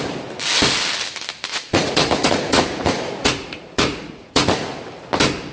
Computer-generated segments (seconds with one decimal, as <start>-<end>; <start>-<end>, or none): 1.5-4.8